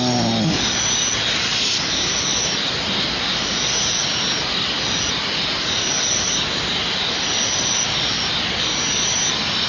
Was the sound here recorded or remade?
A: recorded